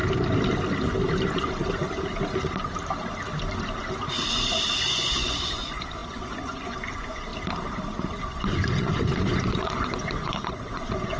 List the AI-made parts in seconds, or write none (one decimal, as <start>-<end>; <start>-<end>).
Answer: 4.8-7.3; 8.3-11.2